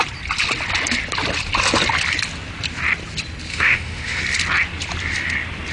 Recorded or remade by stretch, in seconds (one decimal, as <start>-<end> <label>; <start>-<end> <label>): 0.0-3.5 recorded; 3.5-4.2 remade; 4.2-5.7 recorded